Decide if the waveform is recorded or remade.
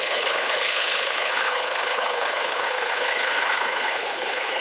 remade